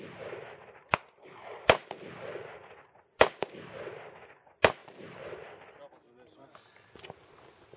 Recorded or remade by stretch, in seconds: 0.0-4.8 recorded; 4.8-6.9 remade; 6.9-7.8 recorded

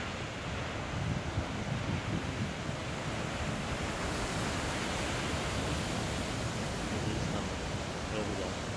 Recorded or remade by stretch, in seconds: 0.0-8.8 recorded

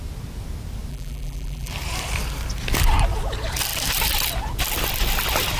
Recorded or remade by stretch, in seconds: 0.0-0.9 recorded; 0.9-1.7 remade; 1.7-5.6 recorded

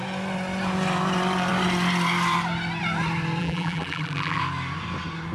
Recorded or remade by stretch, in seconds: 0.0-3.4 recorded; 3.4-4.4 remade; 4.4-5.3 recorded